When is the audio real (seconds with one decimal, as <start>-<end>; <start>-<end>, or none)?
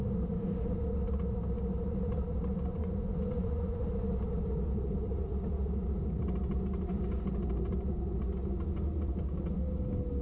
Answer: 0.0-2.7; 3.8-10.2